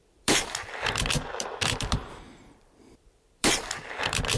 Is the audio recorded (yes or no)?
no